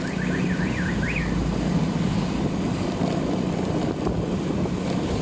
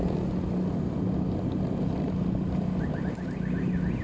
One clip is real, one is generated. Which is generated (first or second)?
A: first